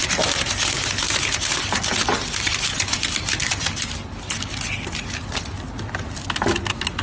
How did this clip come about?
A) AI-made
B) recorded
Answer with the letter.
B